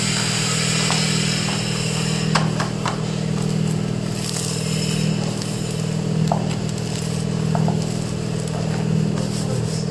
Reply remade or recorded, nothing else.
recorded